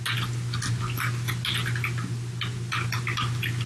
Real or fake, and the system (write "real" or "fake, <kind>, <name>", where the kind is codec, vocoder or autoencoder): real